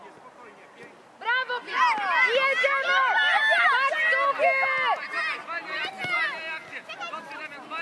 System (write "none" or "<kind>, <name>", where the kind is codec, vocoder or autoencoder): none